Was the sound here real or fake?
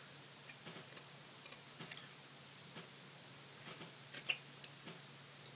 real